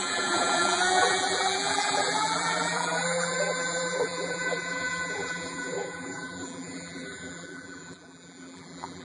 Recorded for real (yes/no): no